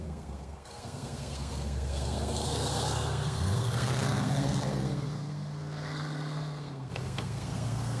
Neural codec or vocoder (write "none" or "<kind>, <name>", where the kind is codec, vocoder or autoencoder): codec, SNAC